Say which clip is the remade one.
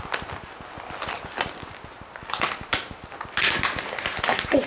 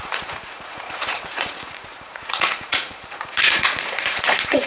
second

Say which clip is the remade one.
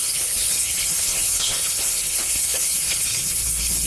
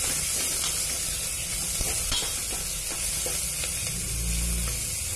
first